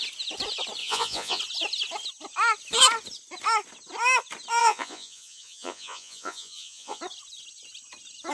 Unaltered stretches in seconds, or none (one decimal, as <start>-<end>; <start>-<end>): 0.0-0.8; 1.4-4.6; 7.0-8.3